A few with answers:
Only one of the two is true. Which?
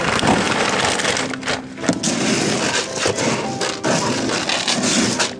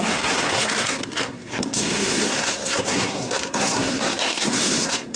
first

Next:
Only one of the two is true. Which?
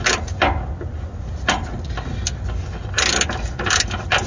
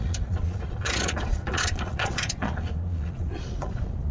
first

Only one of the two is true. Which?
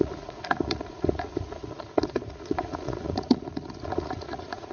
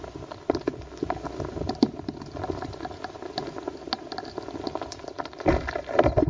second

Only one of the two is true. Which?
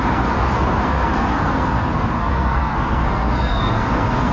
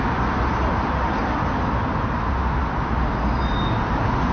second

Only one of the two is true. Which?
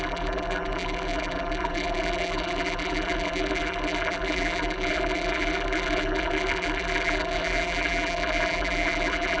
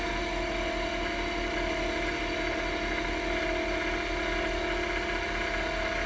second